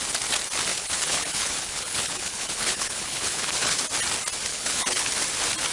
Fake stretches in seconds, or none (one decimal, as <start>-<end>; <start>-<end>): 0.7-3.8; 4.5-5.1